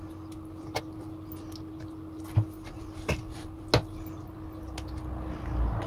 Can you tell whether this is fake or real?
real